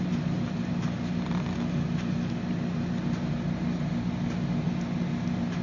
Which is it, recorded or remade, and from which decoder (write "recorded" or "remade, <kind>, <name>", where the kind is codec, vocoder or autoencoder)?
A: recorded